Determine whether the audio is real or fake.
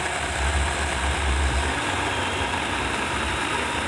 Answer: real